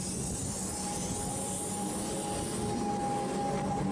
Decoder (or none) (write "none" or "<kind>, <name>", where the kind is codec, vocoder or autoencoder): none